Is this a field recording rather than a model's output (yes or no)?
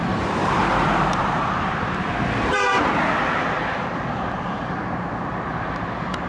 no